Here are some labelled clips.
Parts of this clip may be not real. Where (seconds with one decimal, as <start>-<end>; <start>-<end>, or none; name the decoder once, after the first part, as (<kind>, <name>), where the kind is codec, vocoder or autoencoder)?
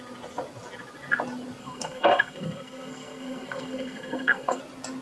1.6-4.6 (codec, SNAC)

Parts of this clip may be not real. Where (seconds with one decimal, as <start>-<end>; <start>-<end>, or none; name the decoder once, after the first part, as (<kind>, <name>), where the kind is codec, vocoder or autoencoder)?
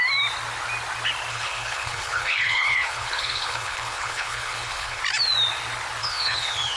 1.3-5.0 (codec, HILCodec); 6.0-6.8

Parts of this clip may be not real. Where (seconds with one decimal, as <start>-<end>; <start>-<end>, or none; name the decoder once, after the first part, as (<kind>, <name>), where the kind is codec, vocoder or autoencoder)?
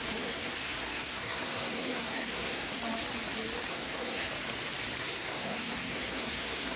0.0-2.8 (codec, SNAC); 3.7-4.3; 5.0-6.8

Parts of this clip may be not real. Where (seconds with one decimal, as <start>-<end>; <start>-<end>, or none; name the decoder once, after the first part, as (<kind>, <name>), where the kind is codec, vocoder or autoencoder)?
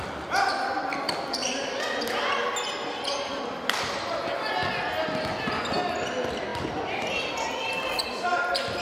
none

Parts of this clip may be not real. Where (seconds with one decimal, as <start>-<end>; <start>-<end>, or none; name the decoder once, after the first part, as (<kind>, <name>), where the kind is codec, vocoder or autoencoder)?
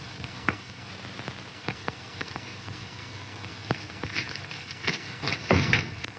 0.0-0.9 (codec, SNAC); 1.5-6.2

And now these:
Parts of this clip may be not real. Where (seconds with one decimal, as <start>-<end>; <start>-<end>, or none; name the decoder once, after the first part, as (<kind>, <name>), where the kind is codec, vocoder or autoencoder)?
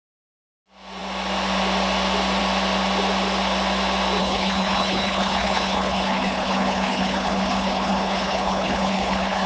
4.2-9.5 (codec, HILCodec)